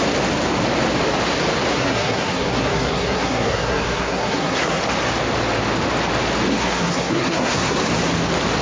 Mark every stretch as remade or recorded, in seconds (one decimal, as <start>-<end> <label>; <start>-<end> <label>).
0.0-1.7 recorded; 1.7-4.8 remade; 4.8-6.5 recorded; 6.5-7.8 remade; 7.8-8.6 recorded